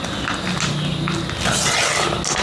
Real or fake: real